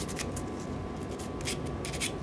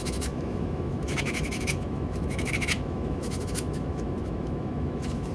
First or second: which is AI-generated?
second